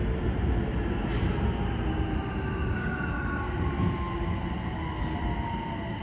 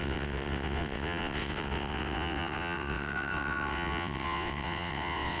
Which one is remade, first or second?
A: second